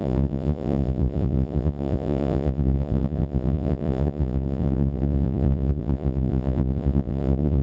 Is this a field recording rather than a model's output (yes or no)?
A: no